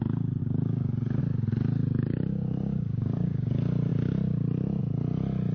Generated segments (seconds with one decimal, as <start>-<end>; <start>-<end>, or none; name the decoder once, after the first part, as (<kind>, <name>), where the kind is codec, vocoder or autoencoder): 0.4-1.2 (codec, DAC); 2.0-3.5